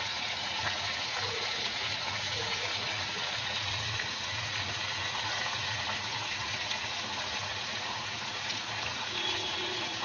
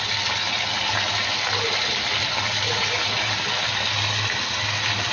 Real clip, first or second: second